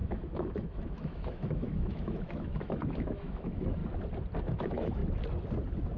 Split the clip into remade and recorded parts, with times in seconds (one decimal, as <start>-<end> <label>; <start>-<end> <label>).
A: 0.0-3.8 remade; 3.8-4.4 recorded; 4.4-5.0 remade; 5.0-6.0 recorded